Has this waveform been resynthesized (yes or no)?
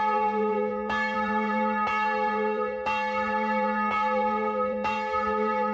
yes